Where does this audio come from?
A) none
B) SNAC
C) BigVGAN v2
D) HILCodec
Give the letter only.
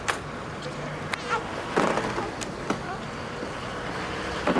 A